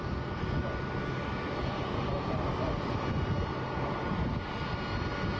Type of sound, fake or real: real